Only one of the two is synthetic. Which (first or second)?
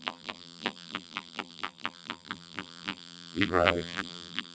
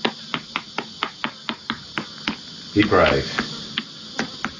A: first